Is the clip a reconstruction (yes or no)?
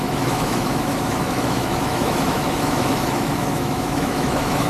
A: yes